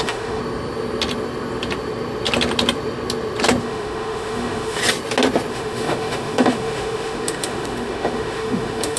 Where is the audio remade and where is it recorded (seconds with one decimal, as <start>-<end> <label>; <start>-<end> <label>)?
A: 0.0-0.4 remade; 0.4-3.6 recorded; 3.6-4.8 remade; 4.8-5.5 recorded; 5.5-9.0 remade